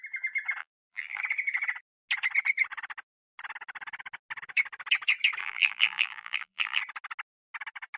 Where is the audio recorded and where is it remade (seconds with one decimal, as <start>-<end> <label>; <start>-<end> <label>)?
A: 0.0-0.6 recorded; 0.6-1.2 remade; 1.2-5.4 recorded; 5.4-6.8 remade; 6.8-8.0 recorded